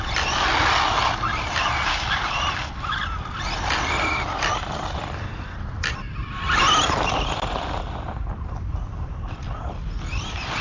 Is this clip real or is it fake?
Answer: real